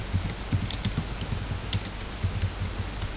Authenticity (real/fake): real